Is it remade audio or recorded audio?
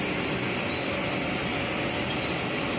recorded